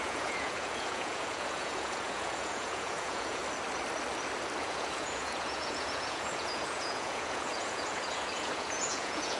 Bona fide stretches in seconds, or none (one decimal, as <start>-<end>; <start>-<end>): 3.4-4.6